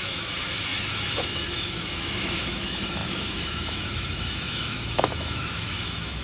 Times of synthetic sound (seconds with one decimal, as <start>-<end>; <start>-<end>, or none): 0.0-6.2